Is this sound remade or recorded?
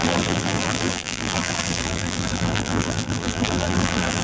remade